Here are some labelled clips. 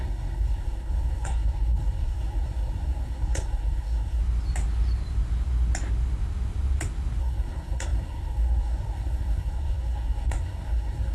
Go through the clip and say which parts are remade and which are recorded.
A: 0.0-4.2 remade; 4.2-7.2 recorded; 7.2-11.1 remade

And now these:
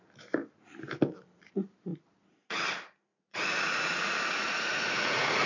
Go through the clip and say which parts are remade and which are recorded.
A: 0.0-3.1 recorded; 3.1-5.5 remade

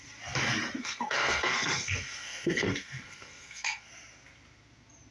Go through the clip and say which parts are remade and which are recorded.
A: 0.0-0.8 recorded; 0.8-3.9 remade; 3.9-5.1 recorded

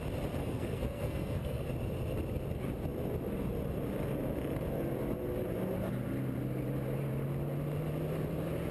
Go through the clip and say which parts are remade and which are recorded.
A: 0.0-0.4 recorded; 0.4-1.7 remade; 1.7-8.7 recorded

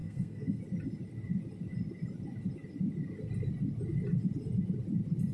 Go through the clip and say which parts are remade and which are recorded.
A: 0.0-0.6 remade; 0.6-5.3 recorded

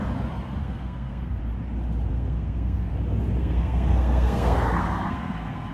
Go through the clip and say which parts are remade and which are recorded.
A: 0.0-0.6 recorded; 0.6-1.4 remade; 1.4-2.1 recorded; 2.1-2.9 remade; 2.9-3.4 recorded; 3.4-5.7 remade

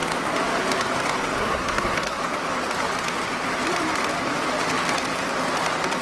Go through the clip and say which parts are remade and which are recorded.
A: 0.0-1.4 recorded; 1.4-2.2 remade; 2.2-6.0 recorded

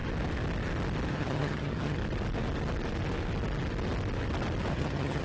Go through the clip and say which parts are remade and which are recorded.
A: 0.0-1.1 recorded; 1.1-2.0 remade; 2.0-4.7 recorded; 4.7-5.2 remade